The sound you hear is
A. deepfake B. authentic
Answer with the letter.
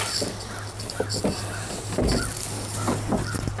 B